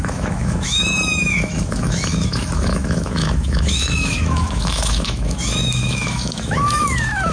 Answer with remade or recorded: remade